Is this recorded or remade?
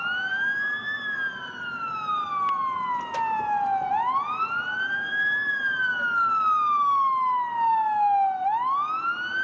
recorded